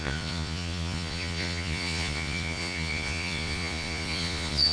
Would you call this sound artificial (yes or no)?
yes